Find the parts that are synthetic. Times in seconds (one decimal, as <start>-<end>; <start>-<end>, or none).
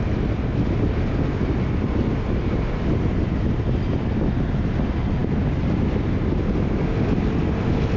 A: none